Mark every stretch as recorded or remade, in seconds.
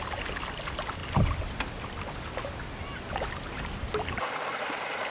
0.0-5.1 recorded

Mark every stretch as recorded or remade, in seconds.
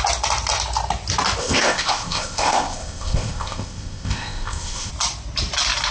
0.0-1.4 recorded; 1.4-4.9 remade; 4.9-5.9 recorded